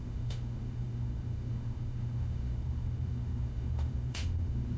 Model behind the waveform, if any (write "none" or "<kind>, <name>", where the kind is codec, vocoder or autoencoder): autoencoder, DAC-VAE